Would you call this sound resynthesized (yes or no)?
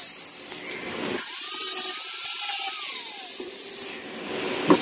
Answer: no